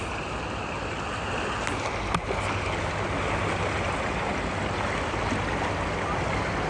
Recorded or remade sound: recorded